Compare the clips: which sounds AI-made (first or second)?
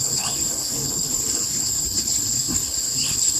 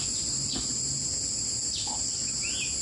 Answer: first